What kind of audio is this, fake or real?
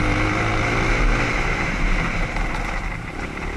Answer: real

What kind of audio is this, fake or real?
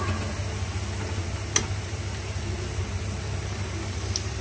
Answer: real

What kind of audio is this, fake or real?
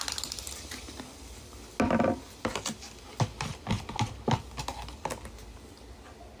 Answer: real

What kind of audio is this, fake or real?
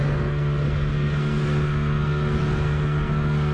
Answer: fake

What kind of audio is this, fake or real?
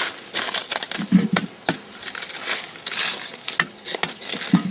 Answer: real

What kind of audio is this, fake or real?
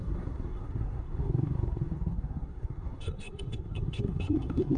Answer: fake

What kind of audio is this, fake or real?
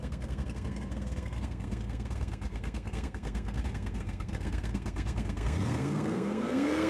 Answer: fake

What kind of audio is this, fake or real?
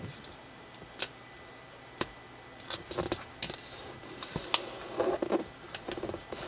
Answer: real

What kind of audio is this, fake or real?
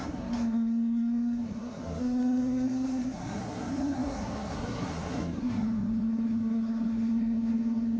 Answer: fake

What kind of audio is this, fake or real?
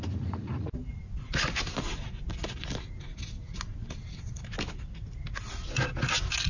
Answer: real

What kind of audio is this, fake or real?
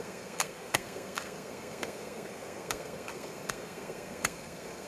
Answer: fake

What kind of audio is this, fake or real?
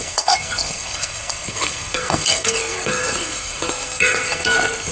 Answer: fake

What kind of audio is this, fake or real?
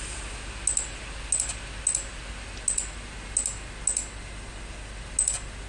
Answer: real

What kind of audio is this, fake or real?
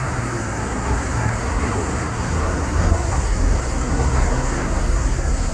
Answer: fake